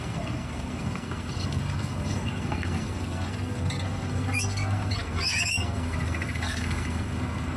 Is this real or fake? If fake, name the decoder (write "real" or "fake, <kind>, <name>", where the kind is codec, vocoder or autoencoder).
fake, codec, SNAC